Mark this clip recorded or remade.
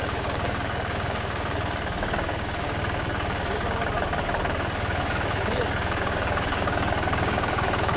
remade